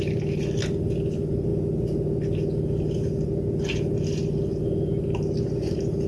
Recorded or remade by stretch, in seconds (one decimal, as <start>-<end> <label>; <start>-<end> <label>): 0.0-6.1 recorded